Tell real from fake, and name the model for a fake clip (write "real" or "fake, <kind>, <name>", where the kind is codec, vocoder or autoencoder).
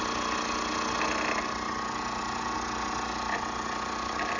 real